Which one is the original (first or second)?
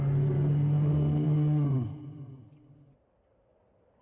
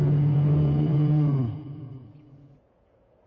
first